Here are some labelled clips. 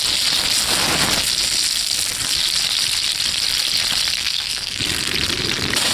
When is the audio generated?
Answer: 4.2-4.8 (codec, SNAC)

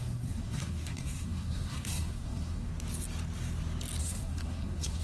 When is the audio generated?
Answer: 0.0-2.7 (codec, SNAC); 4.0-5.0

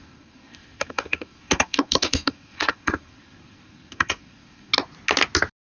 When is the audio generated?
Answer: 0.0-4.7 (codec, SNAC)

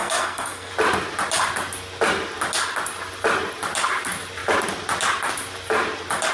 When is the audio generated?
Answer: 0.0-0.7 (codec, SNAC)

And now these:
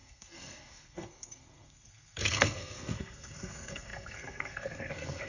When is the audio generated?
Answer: 0.0-5.3 (codec, SNAC)